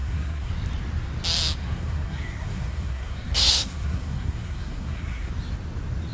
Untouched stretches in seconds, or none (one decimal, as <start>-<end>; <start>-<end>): 0.5-1.6; 5.3-6.1